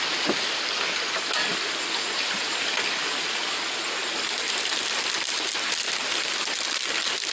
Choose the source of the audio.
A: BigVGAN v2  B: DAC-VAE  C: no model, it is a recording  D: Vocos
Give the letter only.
C